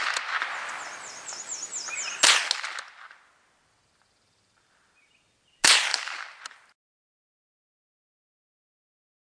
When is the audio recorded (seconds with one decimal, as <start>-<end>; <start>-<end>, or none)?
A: 0.0-5.9; 6.4-9.2